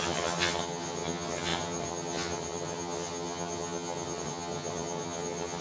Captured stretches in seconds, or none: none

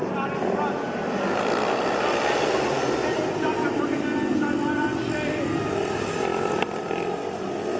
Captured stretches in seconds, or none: 0.0-7.8

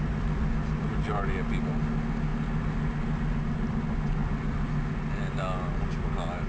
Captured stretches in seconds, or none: 0.0-6.5